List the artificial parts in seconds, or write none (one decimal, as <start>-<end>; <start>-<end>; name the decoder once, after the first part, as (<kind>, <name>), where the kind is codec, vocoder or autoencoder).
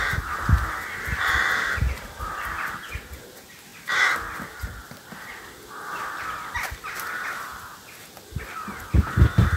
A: none